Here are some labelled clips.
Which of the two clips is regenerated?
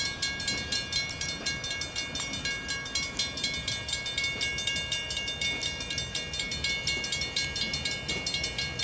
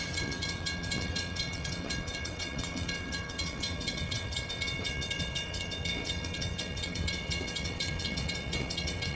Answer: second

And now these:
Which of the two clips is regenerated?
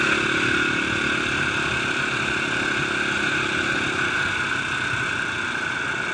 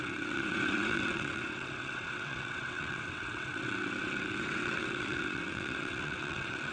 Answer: second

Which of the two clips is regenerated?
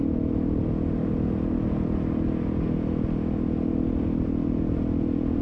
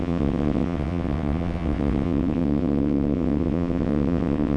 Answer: second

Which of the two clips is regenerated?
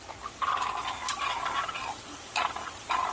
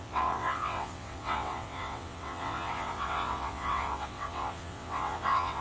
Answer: second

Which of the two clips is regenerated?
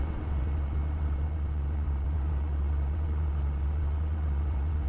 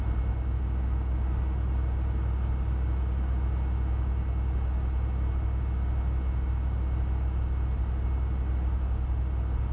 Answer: first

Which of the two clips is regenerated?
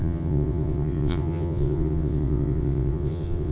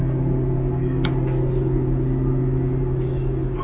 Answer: first